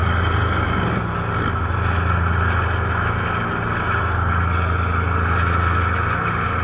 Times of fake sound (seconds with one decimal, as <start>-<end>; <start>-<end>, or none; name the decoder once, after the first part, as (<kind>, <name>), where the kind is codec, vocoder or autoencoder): none